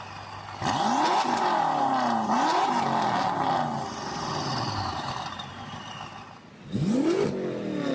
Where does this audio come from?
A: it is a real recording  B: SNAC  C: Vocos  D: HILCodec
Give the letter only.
A